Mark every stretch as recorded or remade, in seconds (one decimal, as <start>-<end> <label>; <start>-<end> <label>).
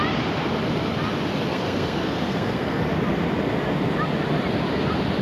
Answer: 0.0-1.5 recorded; 1.5-2.8 remade; 2.8-5.2 recorded